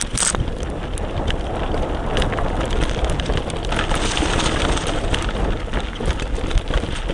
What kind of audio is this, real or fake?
real